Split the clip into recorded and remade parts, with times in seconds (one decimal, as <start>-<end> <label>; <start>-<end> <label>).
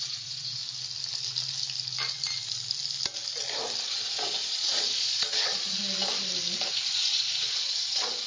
0.0-0.6 remade; 0.6-3.9 recorded; 3.9-5.8 remade; 5.8-6.7 recorded; 6.7-8.3 remade